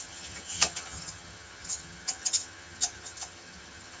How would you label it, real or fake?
fake